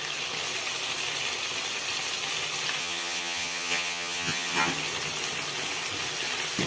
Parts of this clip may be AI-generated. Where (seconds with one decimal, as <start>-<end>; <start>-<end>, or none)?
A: 2.8-4.7